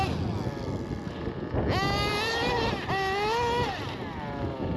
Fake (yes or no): no